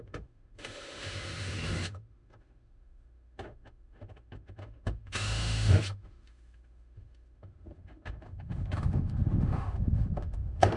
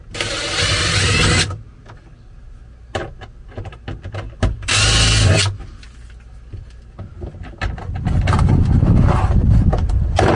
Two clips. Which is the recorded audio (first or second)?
second